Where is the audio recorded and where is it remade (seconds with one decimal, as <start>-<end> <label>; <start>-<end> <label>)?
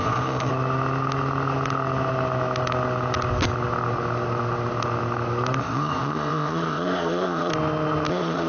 0.0-0.5 remade; 0.5-5.6 recorded; 5.6-7.5 remade; 7.5-8.1 recorded; 8.1-8.5 remade